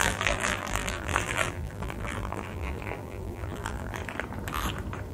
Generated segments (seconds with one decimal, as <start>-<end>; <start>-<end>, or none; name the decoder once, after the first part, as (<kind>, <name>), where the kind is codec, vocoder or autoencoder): 0.0-4.0 (vocoder, BigVGAN v2)